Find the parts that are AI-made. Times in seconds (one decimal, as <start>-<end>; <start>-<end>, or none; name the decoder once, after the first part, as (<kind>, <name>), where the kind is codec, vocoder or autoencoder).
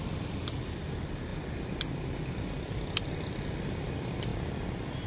none